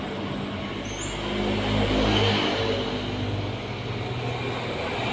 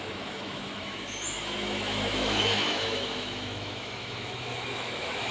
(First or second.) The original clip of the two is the first